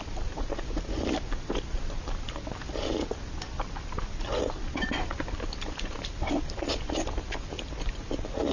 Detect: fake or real real